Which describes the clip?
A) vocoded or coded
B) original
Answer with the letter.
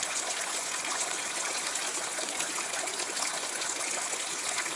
A